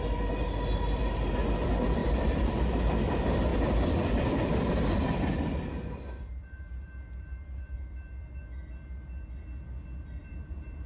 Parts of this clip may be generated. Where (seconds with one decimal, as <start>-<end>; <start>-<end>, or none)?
2.0-2.8; 3.5-4.7; 6.4-8.4; 10.2-10.9